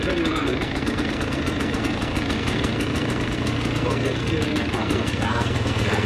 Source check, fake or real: fake